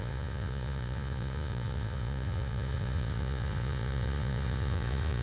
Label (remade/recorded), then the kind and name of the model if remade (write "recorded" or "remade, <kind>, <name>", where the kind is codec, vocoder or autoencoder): remade, vocoder, Vocos